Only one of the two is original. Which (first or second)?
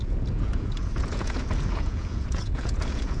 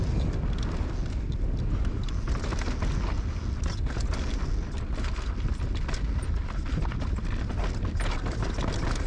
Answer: second